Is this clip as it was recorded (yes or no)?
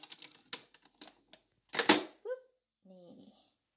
yes